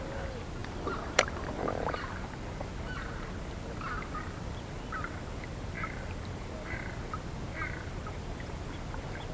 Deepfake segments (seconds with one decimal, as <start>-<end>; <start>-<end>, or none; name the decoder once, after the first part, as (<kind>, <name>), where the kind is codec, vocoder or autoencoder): 0.6-2.0 (vocoder, BigVGAN v2)